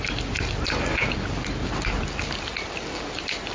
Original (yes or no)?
yes